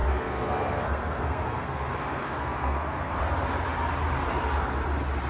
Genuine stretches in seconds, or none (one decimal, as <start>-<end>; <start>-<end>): 3.2-5.3